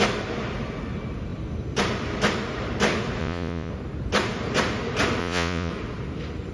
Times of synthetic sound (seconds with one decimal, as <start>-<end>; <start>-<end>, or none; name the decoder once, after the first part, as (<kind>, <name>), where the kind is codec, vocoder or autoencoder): 3.2-3.7 (vocoder, Vocos); 5.2-5.7